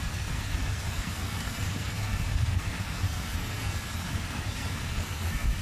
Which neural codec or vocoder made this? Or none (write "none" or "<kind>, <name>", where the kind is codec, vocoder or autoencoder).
codec, SNAC